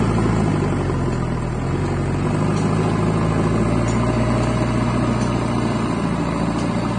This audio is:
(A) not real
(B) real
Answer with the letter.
B